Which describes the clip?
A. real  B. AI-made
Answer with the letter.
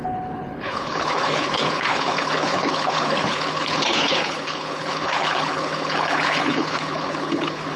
B